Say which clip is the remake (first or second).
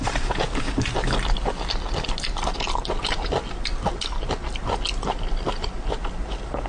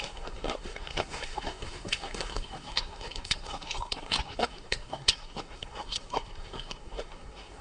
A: second